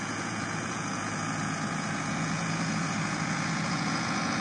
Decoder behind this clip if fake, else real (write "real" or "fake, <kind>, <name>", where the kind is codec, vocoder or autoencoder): fake, vocoder, Vocos